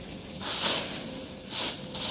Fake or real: real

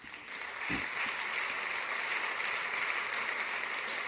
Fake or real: real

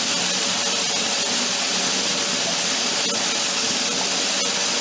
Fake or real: real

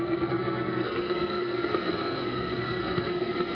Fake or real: fake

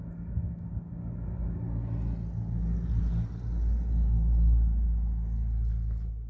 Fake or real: real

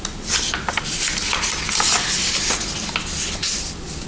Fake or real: real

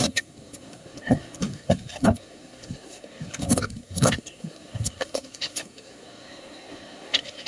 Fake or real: fake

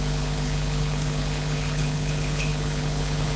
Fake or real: fake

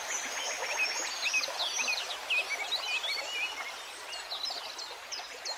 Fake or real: real